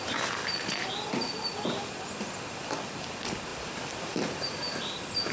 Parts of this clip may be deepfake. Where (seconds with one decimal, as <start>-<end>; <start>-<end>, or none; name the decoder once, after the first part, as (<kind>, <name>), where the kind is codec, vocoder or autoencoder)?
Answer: none